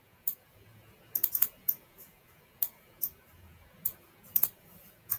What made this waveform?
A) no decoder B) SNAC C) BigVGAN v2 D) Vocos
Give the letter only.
D